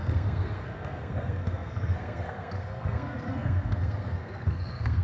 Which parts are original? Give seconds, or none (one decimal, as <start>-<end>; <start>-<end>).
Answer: none